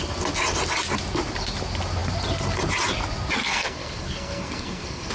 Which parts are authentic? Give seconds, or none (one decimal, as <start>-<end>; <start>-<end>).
0.0-3.4